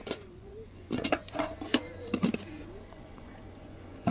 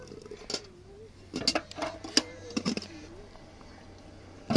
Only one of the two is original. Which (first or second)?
second